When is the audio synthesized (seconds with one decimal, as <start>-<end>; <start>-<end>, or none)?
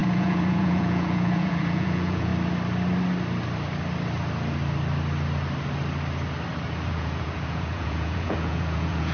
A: 0.0-2.3; 6.9-9.1